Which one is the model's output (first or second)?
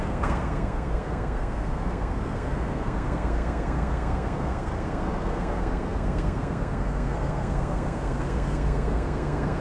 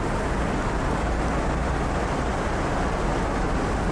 first